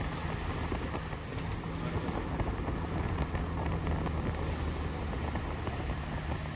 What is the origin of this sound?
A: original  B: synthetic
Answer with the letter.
A